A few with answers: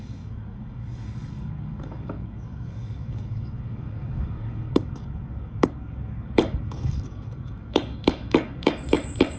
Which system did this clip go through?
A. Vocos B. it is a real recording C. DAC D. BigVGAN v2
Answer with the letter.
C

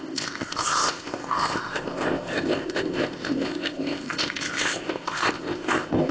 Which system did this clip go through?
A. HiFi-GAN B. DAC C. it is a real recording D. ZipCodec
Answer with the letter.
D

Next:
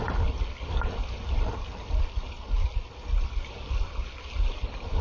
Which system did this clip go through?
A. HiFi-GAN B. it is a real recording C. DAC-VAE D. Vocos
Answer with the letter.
B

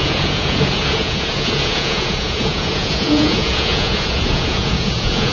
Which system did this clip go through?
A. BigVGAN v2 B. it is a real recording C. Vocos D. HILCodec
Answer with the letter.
C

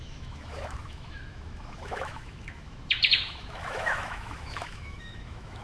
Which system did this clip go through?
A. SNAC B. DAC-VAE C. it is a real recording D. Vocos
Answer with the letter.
B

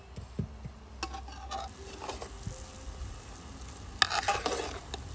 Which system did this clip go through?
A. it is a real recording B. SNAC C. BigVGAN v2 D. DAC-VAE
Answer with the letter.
A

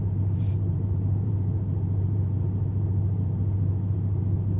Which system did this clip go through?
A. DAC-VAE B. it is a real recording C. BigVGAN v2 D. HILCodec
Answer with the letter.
C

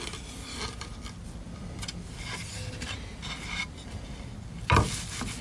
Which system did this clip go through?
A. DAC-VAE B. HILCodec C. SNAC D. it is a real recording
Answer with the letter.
D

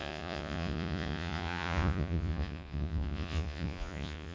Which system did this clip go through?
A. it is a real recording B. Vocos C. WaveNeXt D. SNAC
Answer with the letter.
B